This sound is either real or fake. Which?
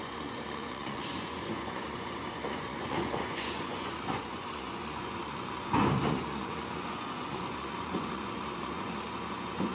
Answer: fake